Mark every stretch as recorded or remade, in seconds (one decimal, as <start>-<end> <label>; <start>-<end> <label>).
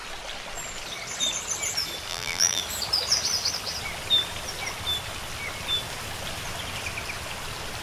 0.0-2.1 recorded; 2.1-2.6 remade; 2.6-7.8 recorded